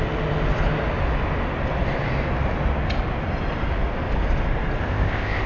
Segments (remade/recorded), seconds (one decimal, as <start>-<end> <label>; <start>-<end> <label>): 0.0-4.8 recorded; 4.8-5.5 remade

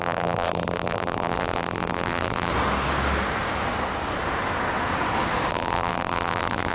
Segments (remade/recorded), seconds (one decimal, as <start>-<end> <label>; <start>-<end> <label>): 0.0-2.5 remade; 2.5-5.5 recorded; 5.5-6.7 remade

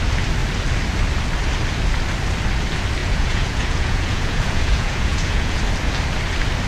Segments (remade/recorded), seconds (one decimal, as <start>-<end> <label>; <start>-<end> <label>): 0.0-3.0 recorded; 3.0-5.6 remade; 5.6-6.7 recorded

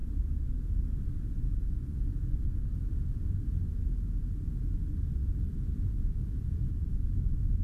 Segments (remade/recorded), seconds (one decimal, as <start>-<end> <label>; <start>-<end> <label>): 0.0-2.5 recorded; 2.5-3.4 remade; 3.4-5.2 recorded; 5.2-6.9 remade; 6.9-7.6 recorded

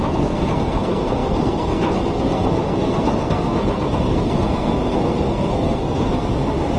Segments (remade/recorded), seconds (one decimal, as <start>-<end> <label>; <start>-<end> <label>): 0.0-6.8 remade

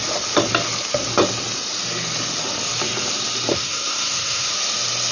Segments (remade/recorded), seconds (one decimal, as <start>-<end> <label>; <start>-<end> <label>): 0.0-3.5 recorded; 3.5-4.5 remade; 4.5-5.1 recorded

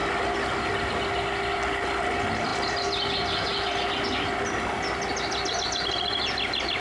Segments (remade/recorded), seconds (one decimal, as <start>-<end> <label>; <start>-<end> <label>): 0.0-6.8 recorded